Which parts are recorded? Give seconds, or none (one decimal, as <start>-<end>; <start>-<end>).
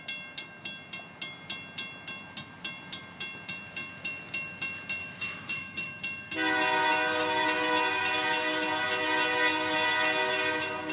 0.0-5.0; 6.0-10.9